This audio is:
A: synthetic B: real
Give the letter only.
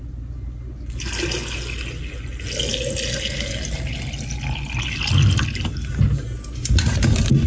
B